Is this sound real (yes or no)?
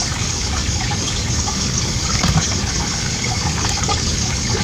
no